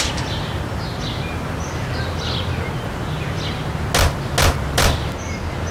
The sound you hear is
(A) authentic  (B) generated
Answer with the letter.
A